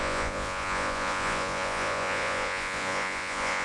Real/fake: fake